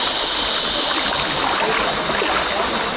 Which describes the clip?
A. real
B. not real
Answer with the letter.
A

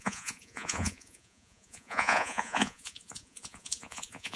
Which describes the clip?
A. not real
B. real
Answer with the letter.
A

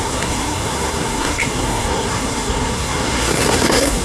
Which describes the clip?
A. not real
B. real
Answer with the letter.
A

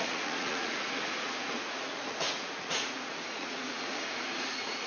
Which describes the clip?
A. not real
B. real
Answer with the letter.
A